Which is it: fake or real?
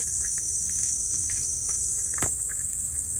fake